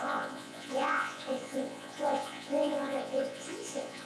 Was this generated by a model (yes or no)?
yes